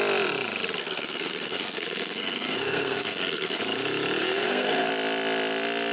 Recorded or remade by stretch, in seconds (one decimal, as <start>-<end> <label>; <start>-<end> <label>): 0.0-0.8 recorded; 0.8-3.6 remade; 3.6-4.2 recorded; 4.2-4.9 remade; 4.9-5.9 recorded